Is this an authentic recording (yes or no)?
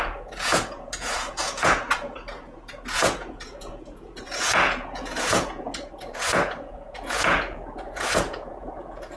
no